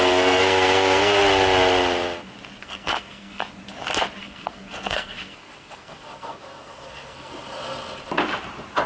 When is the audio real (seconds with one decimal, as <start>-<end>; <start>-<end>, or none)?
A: 1.2-2.6; 3.4-4.2; 7.3-8.9